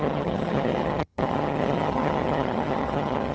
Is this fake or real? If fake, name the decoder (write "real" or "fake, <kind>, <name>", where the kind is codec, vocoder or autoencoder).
fake, vocoder, HiFi-GAN